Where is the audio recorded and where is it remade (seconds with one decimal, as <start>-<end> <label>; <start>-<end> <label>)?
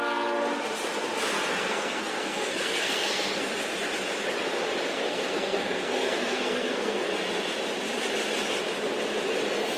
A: 0.0-1.5 recorded; 1.5-3.5 remade; 3.5-4.9 recorded; 4.9-7.1 remade; 7.1-9.8 recorded